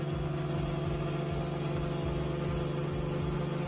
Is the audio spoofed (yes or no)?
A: no